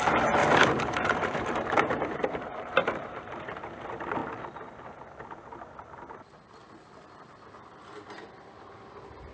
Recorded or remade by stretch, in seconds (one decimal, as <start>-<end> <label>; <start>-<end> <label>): 0.0-0.4 recorded; 0.4-3.4 remade; 3.4-9.3 recorded